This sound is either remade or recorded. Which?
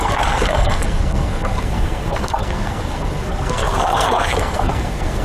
remade